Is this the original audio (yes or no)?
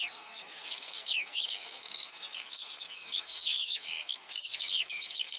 no